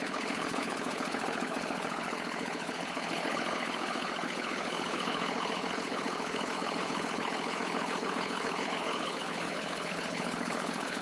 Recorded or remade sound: remade